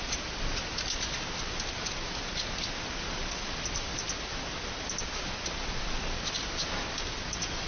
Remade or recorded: recorded